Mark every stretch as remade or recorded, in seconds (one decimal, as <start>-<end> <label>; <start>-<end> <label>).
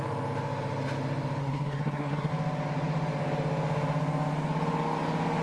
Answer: 0.0-1.4 recorded; 1.4-2.3 remade; 2.3-5.4 recorded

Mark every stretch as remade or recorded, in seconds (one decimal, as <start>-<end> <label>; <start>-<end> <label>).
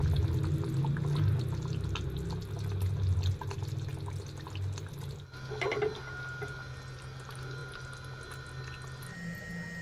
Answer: 0.0-9.8 recorded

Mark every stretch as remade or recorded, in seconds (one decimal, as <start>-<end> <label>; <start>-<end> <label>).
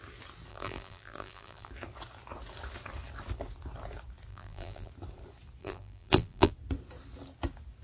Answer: 0.0-0.5 recorded; 0.5-1.7 remade; 1.7-4.3 recorded; 4.3-4.9 remade; 4.9-5.6 recorded; 5.6-6.5 remade; 6.5-7.8 recorded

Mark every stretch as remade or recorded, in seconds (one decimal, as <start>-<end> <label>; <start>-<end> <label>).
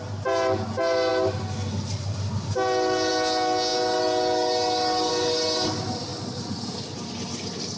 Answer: 0.0-7.8 recorded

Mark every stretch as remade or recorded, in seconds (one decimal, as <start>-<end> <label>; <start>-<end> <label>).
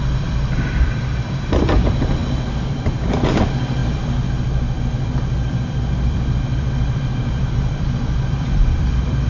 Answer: 0.0-9.3 remade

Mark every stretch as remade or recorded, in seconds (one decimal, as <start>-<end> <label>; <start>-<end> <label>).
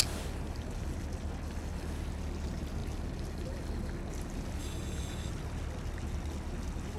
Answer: 0.0-4.6 recorded; 4.6-5.3 remade; 5.3-7.0 recorded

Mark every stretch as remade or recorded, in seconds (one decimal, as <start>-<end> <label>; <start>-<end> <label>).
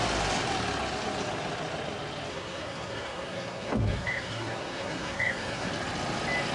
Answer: 0.0-2.3 recorded; 2.3-5.7 remade; 5.7-6.5 recorded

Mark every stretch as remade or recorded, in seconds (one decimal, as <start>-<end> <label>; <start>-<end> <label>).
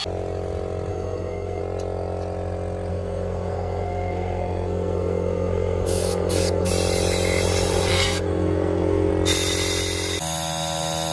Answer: 0.0-0.9 recorded; 0.9-1.6 remade; 1.6-2.9 recorded; 2.9-6.7 remade; 6.7-7.9 recorded; 7.9-9.1 remade; 9.1-11.1 recorded